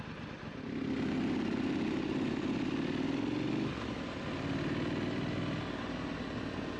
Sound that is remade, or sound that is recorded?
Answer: recorded